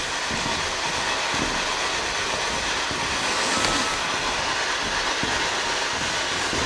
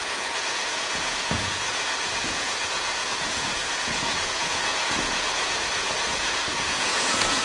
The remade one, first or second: second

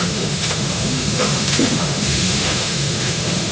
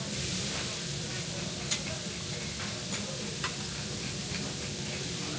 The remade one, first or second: first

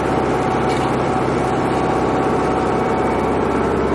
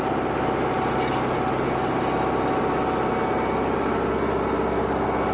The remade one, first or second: first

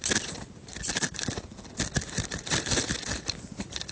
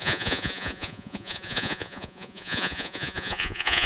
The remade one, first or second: second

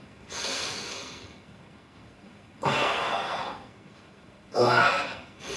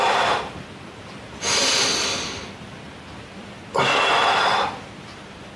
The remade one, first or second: first